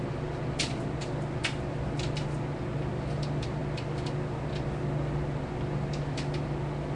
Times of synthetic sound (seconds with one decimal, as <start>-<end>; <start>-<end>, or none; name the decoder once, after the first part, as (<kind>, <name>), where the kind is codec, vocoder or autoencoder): none